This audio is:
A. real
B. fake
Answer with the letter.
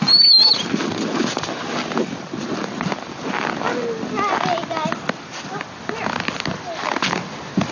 A